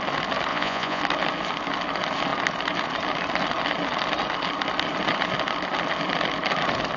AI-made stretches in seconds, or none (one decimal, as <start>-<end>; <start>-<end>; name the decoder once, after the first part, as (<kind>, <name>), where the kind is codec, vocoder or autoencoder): 0.5-1.0 (vocoder, Vocos)